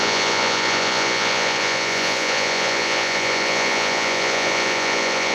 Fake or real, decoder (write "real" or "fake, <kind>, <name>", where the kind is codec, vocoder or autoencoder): fake, vocoder, Vocos